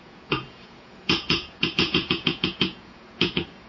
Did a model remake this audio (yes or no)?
yes